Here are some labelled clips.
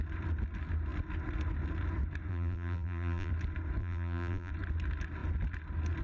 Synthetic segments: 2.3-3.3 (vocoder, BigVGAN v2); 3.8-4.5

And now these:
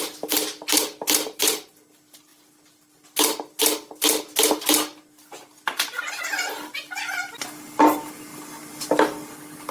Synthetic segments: none

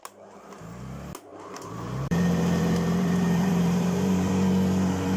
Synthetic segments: 1.3-4.3 (vocoder, BigVGAN v2)

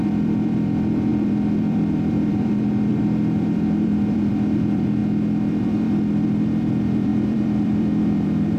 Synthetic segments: 0.0-5.0 (vocoder, BigVGAN v2); 5.6-8.6

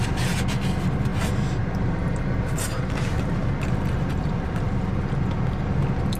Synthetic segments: 4.1-4.9 (vocoder, BigVGAN v2)